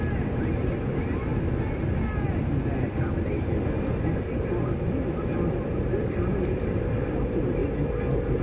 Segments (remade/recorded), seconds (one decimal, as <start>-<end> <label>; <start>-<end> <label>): 0.0-8.4 recorded